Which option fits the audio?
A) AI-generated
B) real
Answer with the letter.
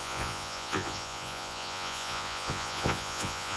A